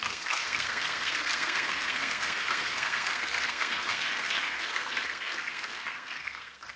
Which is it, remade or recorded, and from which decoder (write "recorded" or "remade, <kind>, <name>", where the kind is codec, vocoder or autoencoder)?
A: remade, codec, SNAC